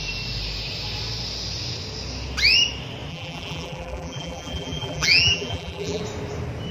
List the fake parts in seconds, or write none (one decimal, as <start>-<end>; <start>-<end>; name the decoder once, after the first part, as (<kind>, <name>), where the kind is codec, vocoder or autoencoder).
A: 3.1-6.0 (vocoder, BigVGAN v2)